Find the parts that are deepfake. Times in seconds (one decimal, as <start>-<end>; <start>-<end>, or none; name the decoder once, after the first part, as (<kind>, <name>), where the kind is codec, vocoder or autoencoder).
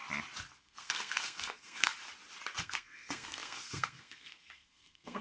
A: 0.6-1.9 (codec, SNAC); 2.6-5.2